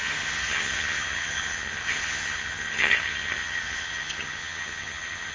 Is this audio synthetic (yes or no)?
yes